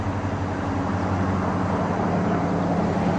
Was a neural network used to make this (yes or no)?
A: no